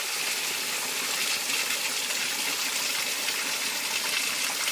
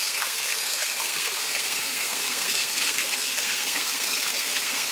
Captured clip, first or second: first